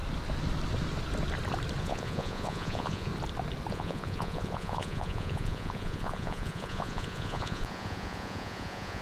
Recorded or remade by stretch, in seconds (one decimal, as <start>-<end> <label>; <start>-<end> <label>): 0.0-1.8 recorded; 1.8-3.1 remade; 3.1-3.7 recorded; 3.7-9.0 remade